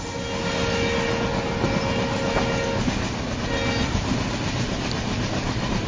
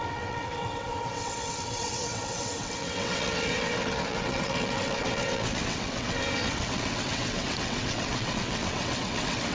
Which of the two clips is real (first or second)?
first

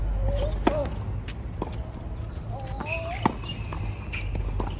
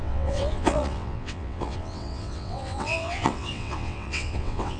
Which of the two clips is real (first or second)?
first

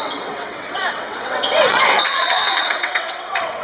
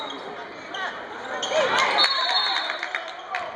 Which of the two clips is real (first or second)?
second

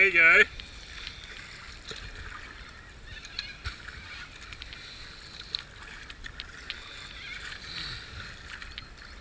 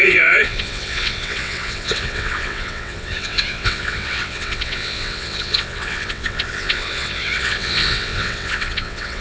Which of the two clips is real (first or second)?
first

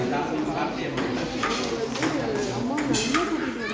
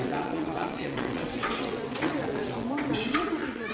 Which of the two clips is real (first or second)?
first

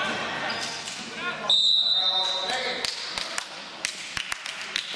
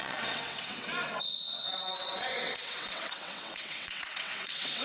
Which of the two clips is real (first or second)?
first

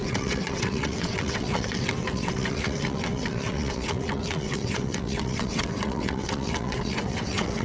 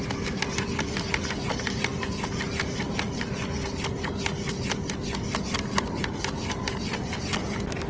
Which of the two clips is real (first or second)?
second